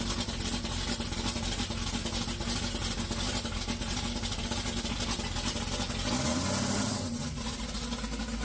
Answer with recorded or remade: recorded